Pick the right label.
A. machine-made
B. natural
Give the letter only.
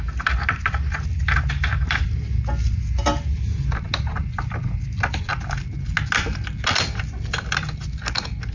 B